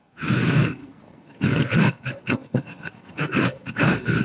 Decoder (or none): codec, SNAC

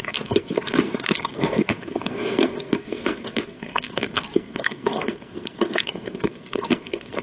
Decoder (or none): codec, SNAC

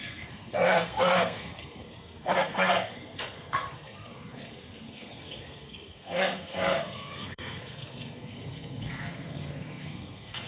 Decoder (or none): codec, SNAC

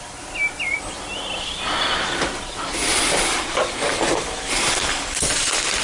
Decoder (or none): none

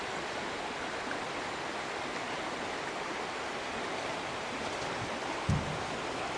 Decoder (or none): none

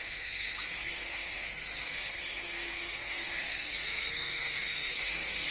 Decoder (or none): codec, SNAC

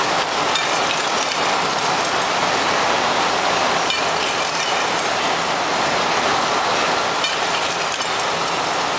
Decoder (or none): none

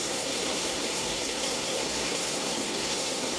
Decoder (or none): codec, SNAC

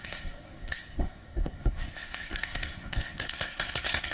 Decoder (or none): codec, SNAC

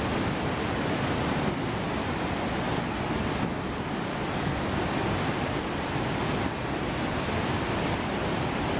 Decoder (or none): none